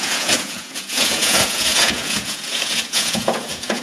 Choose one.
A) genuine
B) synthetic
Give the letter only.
B